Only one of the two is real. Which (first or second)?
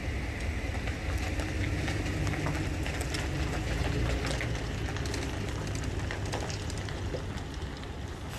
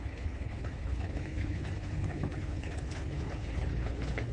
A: first